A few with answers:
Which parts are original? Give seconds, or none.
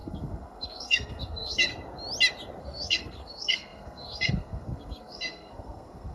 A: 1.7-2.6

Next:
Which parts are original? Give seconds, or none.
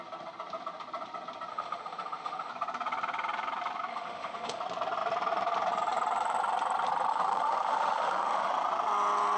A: 0.0-1.5; 2.5-3.9; 4.6-7.1; 8.5-9.4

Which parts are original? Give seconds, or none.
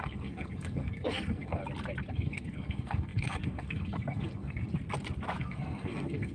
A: 1.6-2.1; 4.7-5.4